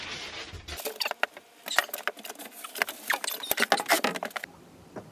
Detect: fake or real real